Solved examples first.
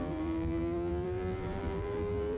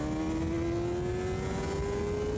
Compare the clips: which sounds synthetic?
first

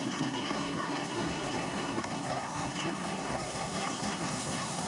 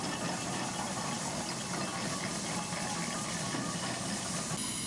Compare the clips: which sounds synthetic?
first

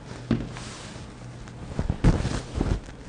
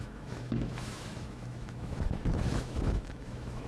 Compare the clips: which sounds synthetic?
second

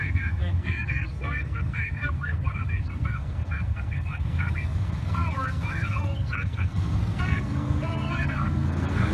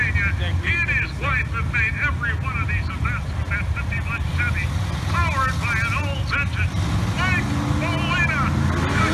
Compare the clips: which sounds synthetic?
first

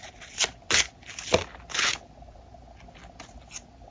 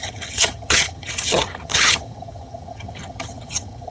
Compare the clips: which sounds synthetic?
second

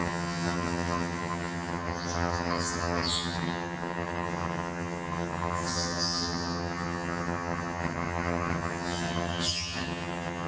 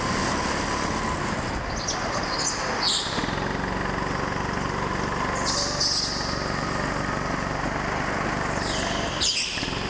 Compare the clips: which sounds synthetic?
first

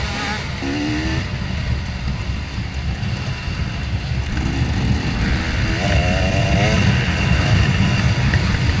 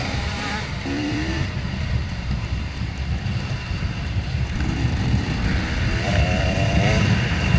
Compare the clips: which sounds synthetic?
second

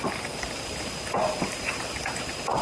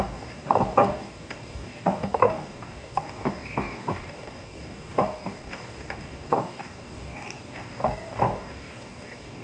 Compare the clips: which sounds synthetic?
second